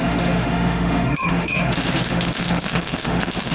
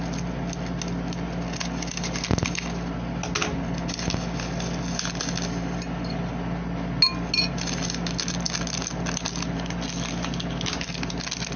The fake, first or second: first